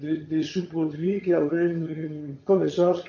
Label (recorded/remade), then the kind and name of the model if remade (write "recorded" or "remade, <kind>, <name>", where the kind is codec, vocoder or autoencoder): remade, vocoder, HiFi-GAN